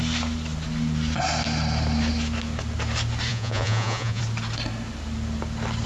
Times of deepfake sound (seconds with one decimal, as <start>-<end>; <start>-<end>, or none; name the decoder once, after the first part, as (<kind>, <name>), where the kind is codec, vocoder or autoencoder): 3.3-4.2 (vocoder, Vocos)